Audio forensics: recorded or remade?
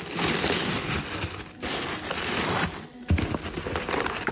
recorded